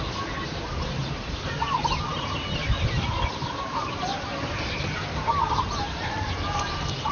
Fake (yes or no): no